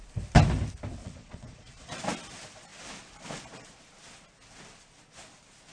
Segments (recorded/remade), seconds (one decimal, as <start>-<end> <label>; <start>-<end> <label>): 0.0-1.0 recorded; 1.0-2.0 remade; 2.0-5.7 recorded